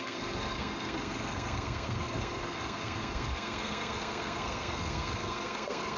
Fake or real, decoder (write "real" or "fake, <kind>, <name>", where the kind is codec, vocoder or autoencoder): fake, codec, SNAC